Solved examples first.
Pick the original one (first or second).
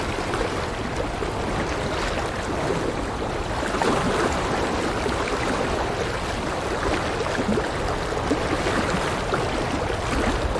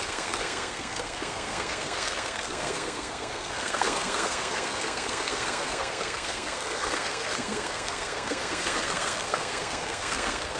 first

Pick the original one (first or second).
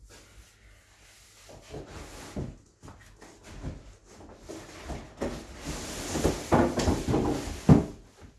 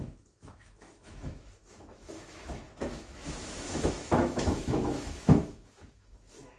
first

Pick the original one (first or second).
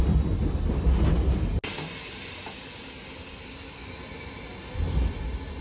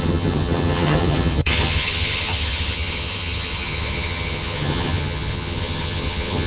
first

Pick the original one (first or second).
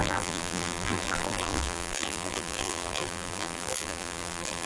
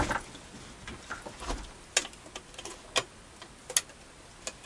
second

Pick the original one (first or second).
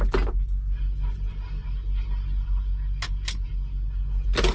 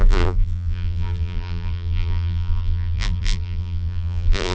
first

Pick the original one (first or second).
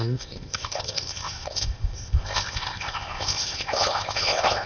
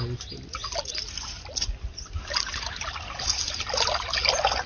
second